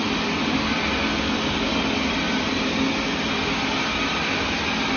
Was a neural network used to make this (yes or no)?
no